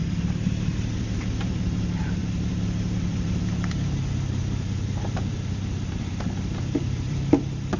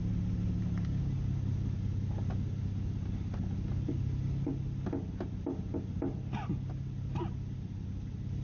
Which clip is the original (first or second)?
second